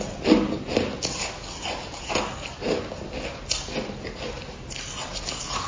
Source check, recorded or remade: recorded